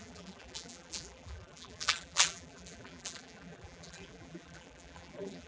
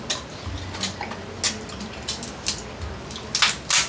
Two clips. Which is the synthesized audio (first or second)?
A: first